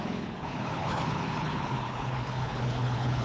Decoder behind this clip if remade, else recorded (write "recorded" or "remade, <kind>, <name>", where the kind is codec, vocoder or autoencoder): remade, codec, HILCodec